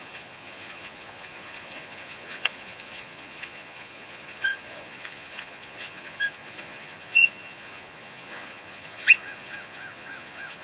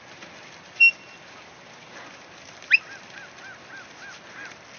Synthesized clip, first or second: first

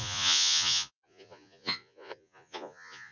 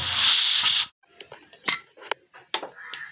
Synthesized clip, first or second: first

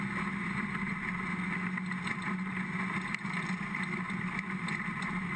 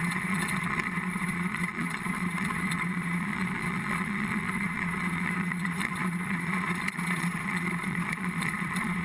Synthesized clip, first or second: second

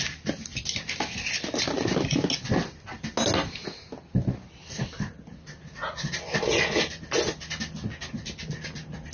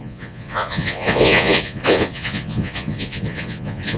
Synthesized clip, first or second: second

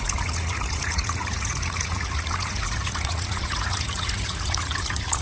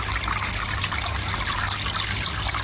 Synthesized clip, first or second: first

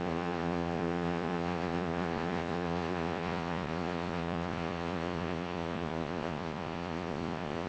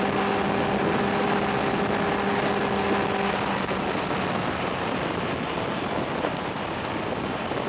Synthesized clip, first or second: first